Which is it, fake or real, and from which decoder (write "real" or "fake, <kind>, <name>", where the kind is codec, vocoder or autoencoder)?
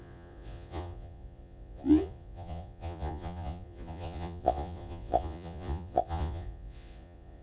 fake, vocoder, Vocos